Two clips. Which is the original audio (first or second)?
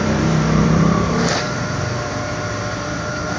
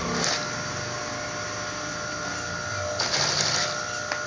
second